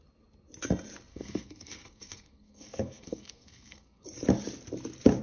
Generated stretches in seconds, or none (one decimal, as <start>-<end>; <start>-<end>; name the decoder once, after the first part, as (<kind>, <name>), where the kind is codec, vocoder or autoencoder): 1.1-4.0 (codec, SNAC)